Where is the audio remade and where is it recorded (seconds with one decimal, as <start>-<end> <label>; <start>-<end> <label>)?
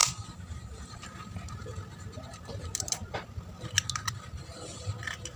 0.0-0.9 remade; 0.9-5.4 recorded